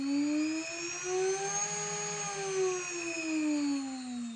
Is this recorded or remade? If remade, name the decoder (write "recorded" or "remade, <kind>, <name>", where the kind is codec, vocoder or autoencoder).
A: recorded